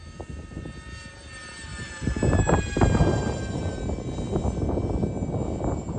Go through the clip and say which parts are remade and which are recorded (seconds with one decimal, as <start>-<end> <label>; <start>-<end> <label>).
0.0-6.0 recorded